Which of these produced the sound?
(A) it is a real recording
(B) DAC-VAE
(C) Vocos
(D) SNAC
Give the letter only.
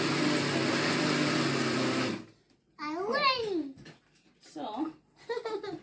A